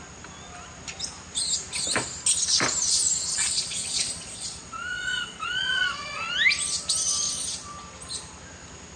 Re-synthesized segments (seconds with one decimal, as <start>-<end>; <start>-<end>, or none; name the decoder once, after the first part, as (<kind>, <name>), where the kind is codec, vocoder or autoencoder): 3.3-6.3 (vocoder, Vocos)